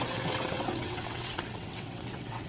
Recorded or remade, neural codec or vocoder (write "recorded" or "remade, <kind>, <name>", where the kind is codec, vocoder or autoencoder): remade, vocoder, WaveNeXt